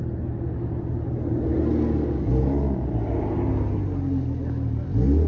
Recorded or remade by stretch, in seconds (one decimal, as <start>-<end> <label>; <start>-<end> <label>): 0.0-5.3 recorded